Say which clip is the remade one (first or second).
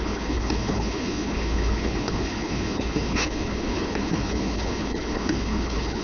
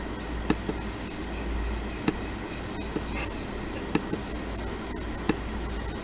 first